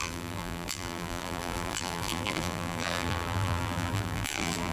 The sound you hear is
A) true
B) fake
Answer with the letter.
B